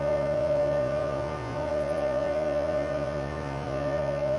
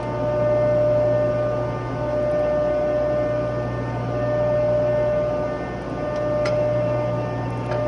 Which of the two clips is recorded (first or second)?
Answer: second